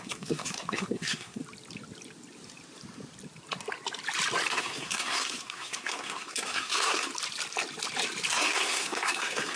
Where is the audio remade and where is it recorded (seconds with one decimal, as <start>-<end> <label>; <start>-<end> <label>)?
0.0-1.4 remade; 1.4-4.5 recorded; 4.5-7.1 remade; 7.1-8.3 recorded; 8.3-9.6 remade